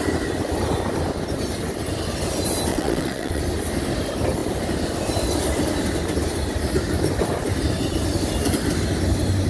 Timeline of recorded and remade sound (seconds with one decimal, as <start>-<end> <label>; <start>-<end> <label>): 0.0-2.7 recorded; 2.7-3.4 remade; 3.4-9.5 recorded